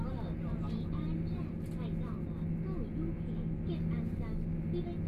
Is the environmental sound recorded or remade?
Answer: recorded